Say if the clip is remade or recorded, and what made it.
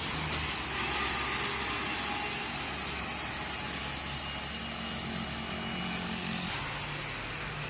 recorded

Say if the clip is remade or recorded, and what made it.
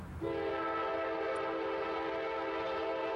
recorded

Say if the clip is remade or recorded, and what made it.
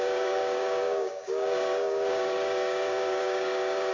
remade, codec, DAC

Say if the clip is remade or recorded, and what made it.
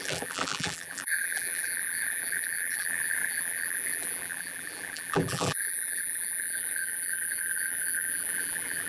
remade, vocoder, BigVGAN v2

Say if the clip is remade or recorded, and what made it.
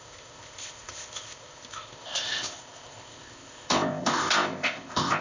remade, codec, ZipCodec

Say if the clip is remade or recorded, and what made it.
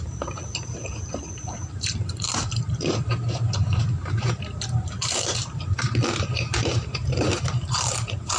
remade, vocoder, BigVGAN v2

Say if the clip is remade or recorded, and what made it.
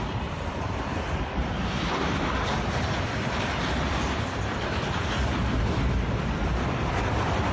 remade, vocoder, BigVGAN v2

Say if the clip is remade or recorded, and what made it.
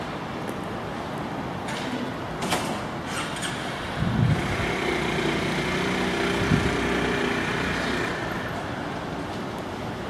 recorded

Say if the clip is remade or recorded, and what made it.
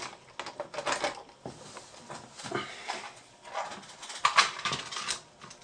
recorded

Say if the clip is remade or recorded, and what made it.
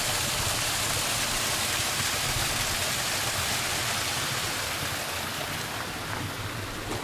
recorded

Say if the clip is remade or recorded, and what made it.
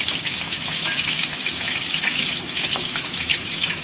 remade, autoencoder, DAC-VAE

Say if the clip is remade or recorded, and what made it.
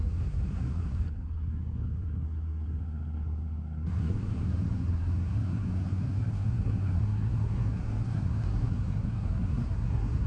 remade, codec, SNAC